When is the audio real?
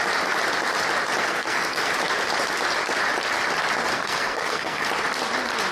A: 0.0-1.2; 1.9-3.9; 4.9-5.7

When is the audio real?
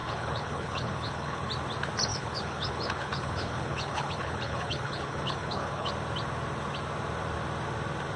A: 1.5-2.1; 5.9-8.2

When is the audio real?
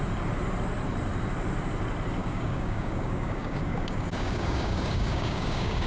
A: 0.0-2.2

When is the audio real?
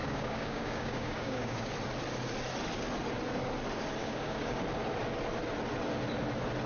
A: 1.7-4.0; 4.6-6.7